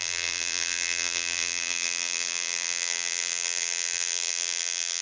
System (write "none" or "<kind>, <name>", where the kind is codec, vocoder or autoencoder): vocoder, BigVGAN v2